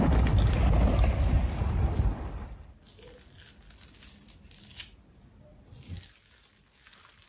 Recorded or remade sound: recorded